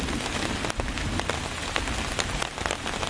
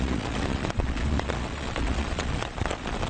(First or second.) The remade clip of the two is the second